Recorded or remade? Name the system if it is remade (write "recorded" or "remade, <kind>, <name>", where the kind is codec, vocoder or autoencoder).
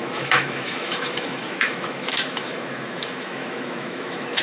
remade, autoencoder, DAC-VAE